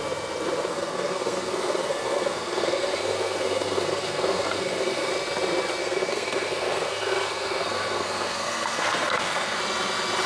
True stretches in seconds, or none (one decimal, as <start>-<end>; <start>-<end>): 0.0-0.7; 5.1-5.8; 9.6-10.3